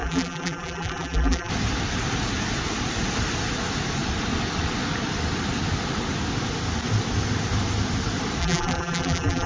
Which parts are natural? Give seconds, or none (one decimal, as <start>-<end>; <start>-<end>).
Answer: 1.5-8.4